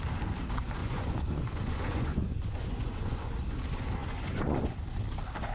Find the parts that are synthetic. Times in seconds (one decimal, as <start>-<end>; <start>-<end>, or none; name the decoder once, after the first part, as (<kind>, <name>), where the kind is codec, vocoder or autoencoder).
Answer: 0.8-3.3 (vocoder, Vocos); 4.0-4.7